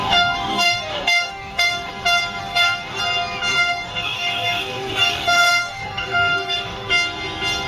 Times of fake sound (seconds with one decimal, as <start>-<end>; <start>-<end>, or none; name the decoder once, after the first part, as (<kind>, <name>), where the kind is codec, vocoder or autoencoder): 0.0-1.9 (codec, DAC); 2.4-3.0; 3.5-6.9